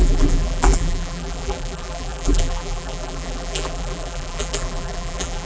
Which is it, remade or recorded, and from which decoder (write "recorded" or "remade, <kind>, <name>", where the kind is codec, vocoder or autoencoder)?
remade, vocoder, BigVGAN v2